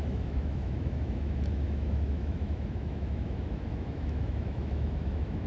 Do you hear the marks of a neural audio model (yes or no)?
yes